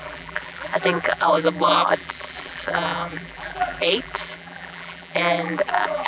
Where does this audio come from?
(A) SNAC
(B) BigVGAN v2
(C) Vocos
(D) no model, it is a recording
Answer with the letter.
B